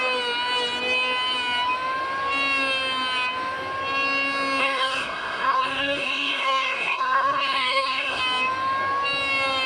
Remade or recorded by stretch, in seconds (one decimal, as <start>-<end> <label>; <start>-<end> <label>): 0.0-4.6 recorded; 4.6-8.2 remade; 8.2-9.7 recorded